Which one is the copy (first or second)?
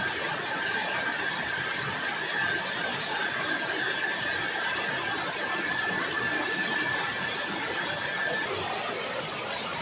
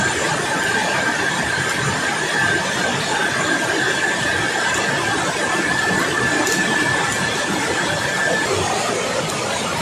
second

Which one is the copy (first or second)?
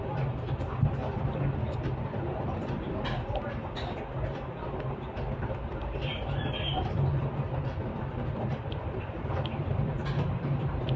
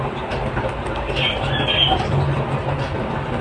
first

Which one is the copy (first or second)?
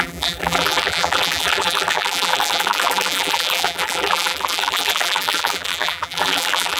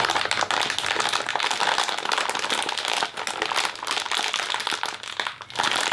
first